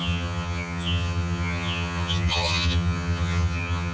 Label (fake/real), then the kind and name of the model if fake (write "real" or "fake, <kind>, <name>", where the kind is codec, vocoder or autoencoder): fake, vocoder, HiFi-GAN